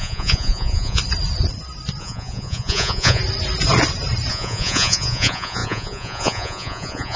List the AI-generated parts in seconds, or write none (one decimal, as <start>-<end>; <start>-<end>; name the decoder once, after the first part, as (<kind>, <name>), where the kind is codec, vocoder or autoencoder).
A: 0.0-1.0 (vocoder, Vocos); 2.0-3.2; 4.3-7.2